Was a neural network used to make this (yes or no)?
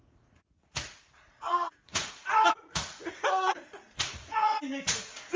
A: yes